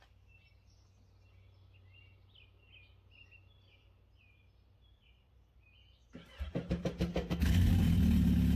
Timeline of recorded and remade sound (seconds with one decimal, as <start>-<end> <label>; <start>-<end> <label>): 0.0-7.1 recorded; 7.1-7.7 remade; 7.7-8.6 recorded